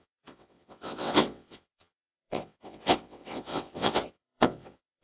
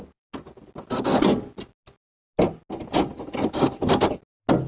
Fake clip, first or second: first